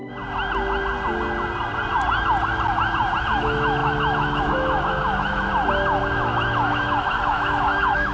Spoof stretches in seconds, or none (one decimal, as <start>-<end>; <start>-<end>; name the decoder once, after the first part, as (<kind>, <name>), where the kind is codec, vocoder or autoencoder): 3.2-5.5 (autoencoder, DAC-VAE); 6.0-8.1